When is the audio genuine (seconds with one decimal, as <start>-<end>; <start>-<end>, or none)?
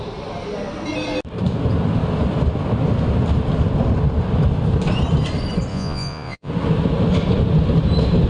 0.0-5.7; 6.5-8.3